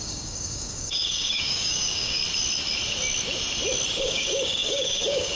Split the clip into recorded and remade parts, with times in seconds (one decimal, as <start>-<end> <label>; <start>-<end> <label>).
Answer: 0.0-2.2 remade; 2.2-4.0 recorded; 4.0-5.4 remade